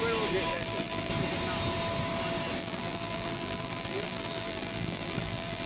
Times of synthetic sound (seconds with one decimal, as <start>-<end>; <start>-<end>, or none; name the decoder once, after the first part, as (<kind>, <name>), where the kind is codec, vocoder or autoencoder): 0.5-1.1 (vocoder, BigVGAN v2); 2.6-5.7